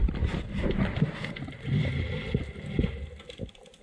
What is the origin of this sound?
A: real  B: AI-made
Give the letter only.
A